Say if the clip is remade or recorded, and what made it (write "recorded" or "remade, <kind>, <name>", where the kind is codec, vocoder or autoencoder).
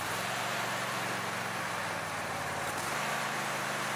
remade, vocoder, BigVGAN v2